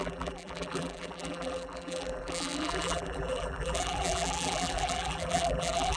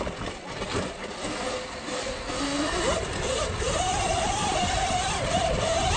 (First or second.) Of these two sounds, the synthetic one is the first